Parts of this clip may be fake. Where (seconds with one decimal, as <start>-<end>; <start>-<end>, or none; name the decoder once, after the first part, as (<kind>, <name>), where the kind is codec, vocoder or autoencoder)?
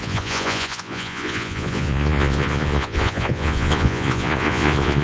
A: 0.0-5.0 (vocoder, Vocos)